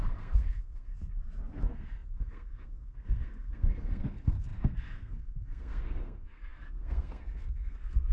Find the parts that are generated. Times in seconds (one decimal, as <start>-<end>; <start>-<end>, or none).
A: 0.0-0.9; 1.5-8.1